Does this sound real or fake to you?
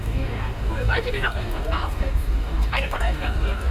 fake